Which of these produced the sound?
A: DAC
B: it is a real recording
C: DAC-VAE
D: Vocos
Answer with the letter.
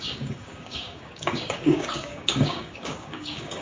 A